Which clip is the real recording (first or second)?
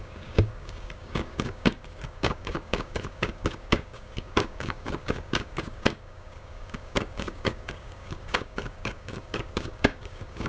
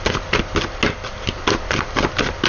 second